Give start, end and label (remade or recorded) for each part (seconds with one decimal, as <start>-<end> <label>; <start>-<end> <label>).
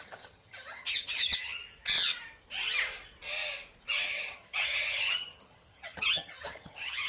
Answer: 0.0-1.6 remade; 1.6-4.1 recorded; 4.1-7.1 remade